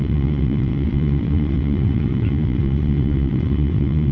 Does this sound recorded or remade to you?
remade